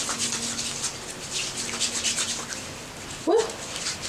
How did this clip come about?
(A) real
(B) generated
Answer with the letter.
A